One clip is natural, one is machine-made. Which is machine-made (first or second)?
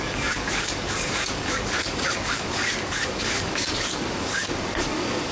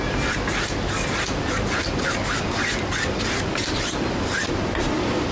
first